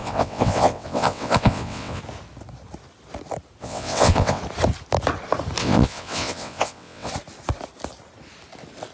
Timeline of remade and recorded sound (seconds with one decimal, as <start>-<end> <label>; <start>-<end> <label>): 0.0-2.0 remade; 2.0-3.6 recorded; 3.6-4.4 remade; 4.4-5.6 recorded; 5.6-7.1 remade; 7.1-8.9 recorded